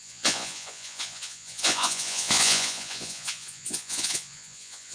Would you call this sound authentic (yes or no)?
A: no